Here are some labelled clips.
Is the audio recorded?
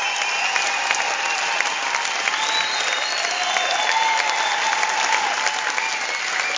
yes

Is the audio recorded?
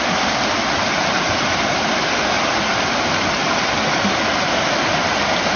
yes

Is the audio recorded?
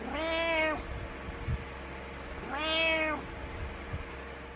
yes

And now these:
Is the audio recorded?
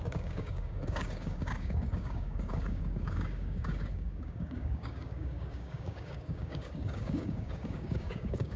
no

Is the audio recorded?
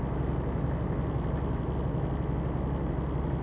yes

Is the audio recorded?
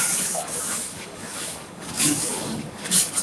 no